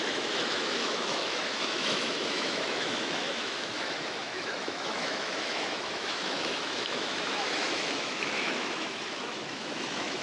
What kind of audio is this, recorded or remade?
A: remade